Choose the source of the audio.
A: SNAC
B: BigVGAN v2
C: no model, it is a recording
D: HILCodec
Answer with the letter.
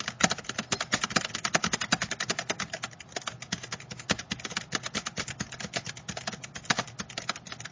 C